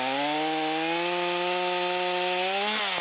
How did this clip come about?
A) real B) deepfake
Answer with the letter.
A